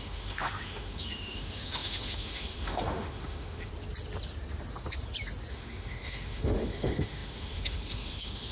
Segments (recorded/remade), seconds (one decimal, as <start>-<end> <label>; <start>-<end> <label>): 0.0-3.7 remade; 3.7-5.5 recorded; 5.5-8.5 remade